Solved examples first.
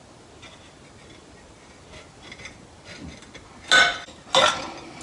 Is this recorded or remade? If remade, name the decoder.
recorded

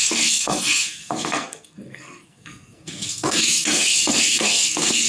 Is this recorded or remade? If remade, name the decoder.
remade, codec, SNAC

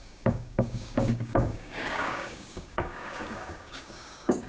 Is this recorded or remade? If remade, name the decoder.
remade, codec, DAC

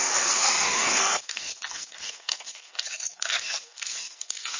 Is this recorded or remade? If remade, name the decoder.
remade, codec, SNAC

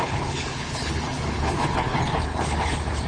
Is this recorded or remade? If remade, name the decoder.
remade, codec, HILCodec